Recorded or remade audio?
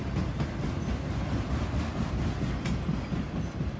recorded